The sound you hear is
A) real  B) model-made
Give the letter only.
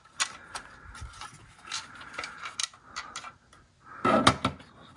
A